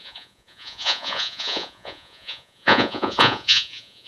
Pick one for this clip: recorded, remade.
remade